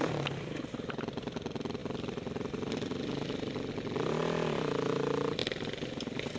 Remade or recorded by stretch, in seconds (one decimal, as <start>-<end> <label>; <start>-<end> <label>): 0.0-6.4 recorded